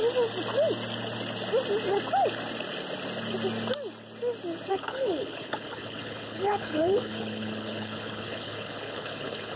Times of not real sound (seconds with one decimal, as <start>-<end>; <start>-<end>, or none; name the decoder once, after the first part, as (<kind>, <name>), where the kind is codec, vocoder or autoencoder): 4.7-9.6 (codec, HILCodec)